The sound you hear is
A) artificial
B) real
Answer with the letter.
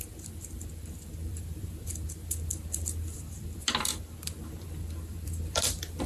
A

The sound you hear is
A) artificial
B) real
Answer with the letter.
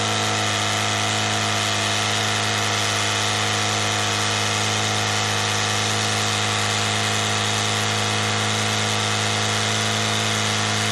B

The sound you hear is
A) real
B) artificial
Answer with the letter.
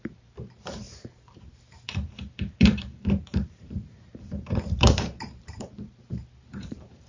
B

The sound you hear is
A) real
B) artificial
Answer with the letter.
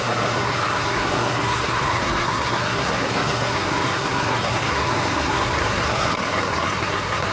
B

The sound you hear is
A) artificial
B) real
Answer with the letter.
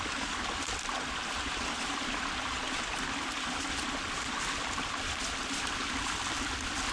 B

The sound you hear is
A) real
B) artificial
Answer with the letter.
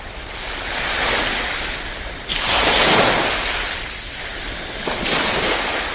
A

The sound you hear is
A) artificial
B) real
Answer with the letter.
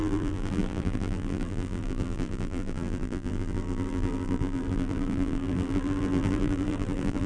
A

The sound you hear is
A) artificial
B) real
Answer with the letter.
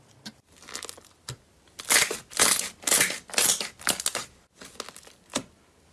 B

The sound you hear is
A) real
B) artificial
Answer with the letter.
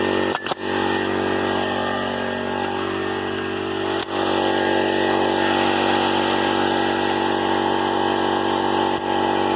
A